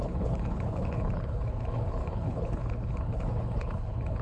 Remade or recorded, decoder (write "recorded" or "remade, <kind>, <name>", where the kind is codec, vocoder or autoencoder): remade, codec, HILCodec